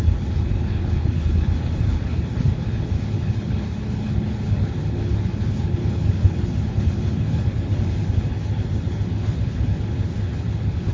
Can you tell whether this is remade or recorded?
remade